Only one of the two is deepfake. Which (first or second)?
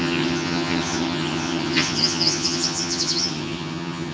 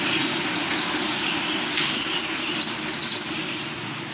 first